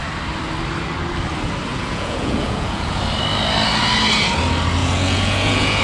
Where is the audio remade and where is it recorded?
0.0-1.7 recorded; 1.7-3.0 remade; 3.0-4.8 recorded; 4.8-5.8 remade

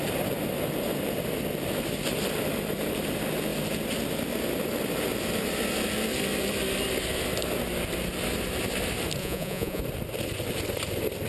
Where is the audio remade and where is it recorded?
0.0-9.2 recorded; 9.2-9.8 remade; 9.8-11.3 recorded

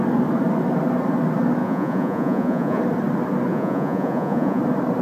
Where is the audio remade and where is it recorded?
0.0-1.6 recorded; 1.6-2.8 remade; 2.8-3.5 recorded; 3.5-4.6 remade; 4.6-5.0 recorded

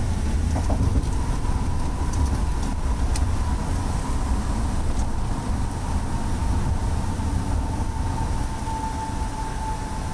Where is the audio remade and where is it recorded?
0.0-10.1 recorded

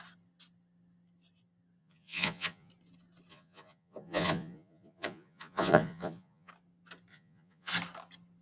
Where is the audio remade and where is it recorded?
0.0-1.8 recorded; 1.8-2.7 remade; 2.7-3.3 recorded; 3.3-6.5 remade; 6.5-7.1 recorded; 7.1-7.7 remade; 7.7-8.4 recorded